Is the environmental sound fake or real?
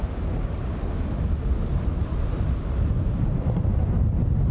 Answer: real